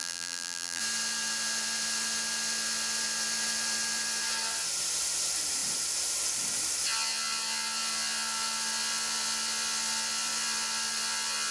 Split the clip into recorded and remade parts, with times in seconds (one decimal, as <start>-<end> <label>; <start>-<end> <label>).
0.0-0.8 remade; 0.8-11.5 recorded